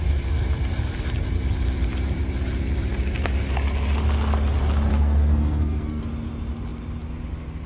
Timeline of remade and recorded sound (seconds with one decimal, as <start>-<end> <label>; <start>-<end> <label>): 0.0-4.9 recorded; 4.9-6.0 remade; 6.0-7.7 recorded